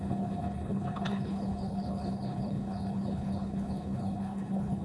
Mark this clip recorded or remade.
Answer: remade